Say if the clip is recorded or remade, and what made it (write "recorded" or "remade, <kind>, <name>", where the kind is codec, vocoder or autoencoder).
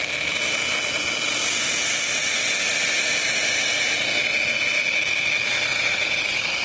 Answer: recorded